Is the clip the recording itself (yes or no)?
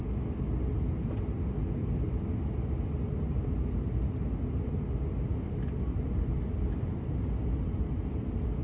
yes